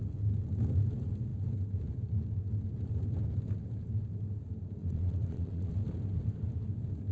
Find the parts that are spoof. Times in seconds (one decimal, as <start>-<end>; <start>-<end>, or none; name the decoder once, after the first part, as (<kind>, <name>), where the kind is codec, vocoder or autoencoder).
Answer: 4.8-5.7 (vocoder, Vocos)